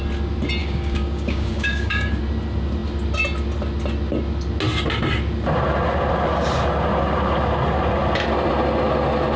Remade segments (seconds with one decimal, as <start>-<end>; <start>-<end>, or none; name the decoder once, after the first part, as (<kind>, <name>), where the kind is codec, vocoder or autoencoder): 0.6-2.2 (codec, DAC)